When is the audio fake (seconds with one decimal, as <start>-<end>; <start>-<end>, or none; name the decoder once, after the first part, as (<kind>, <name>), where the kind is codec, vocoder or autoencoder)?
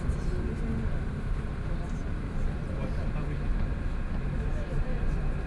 none